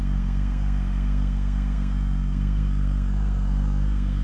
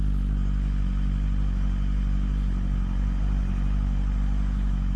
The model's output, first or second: first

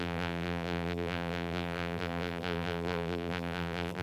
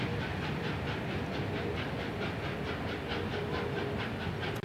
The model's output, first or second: first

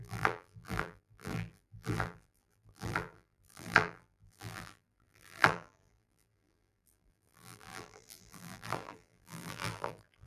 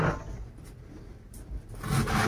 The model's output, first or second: first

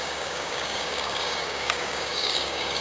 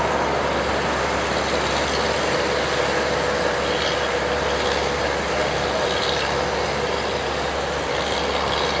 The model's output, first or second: first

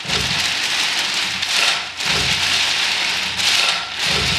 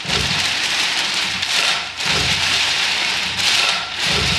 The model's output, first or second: second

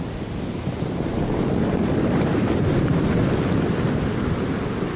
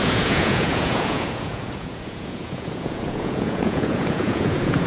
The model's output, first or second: second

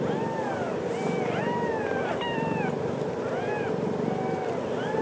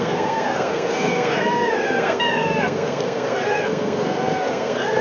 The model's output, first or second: second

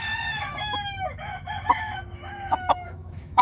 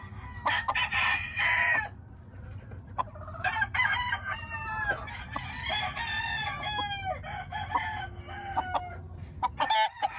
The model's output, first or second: first